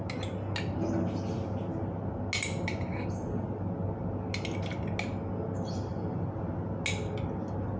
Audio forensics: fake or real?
real